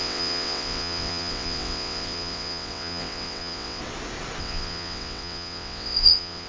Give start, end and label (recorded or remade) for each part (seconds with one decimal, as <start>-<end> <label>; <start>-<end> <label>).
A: 0.0-3.8 remade; 3.8-4.4 recorded; 4.4-6.5 remade